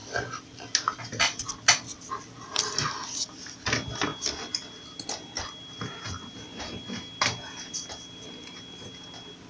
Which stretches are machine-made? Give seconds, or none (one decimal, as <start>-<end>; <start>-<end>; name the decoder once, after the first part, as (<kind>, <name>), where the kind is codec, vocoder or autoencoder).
none